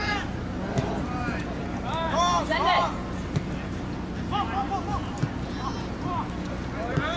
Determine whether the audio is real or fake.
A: real